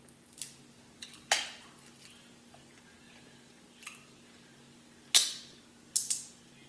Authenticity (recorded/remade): recorded